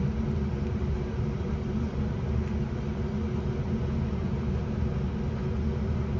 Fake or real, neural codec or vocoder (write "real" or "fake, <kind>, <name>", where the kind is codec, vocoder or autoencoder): real